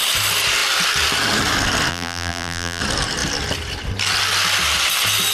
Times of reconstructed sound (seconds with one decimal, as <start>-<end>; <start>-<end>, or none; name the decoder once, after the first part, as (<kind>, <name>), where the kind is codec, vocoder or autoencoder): 1.9-2.8 (vocoder, BigVGAN v2)